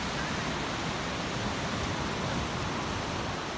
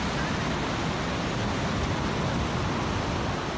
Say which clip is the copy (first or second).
first